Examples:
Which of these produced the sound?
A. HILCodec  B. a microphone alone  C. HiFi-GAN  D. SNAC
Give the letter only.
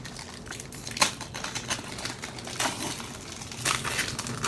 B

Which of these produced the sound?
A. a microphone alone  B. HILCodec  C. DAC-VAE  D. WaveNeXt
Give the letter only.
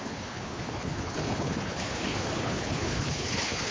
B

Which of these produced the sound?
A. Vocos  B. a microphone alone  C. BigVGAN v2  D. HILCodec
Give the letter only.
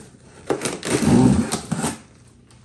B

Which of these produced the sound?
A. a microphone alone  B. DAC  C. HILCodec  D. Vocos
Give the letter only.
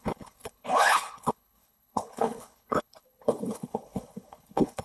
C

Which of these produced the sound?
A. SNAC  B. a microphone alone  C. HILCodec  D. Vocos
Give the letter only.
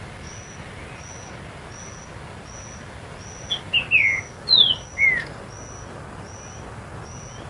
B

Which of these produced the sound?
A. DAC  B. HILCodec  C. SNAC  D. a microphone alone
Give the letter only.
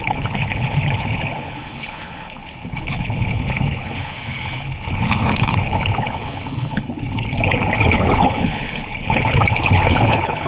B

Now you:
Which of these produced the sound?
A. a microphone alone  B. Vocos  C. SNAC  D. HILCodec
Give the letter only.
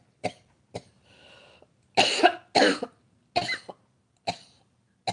A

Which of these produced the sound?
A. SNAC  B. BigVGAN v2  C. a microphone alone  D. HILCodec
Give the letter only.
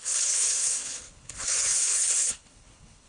D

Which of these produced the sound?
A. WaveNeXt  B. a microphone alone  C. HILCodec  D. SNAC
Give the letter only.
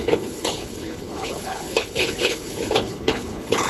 C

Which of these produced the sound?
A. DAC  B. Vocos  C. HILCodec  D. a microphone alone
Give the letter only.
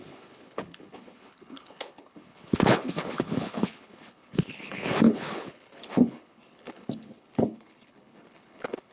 C